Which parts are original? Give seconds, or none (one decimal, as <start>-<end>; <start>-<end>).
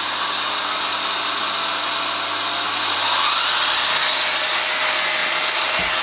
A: 0.0-5.2